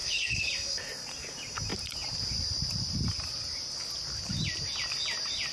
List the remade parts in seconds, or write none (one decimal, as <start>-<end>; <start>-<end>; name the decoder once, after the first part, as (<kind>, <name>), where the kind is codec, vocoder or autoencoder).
0.0-0.5 (codec, HILCodec)